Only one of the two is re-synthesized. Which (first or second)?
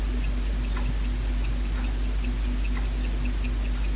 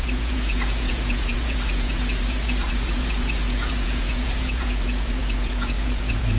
second